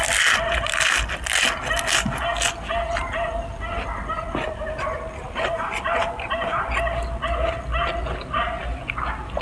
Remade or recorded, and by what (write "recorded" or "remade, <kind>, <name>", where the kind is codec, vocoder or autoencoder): recorded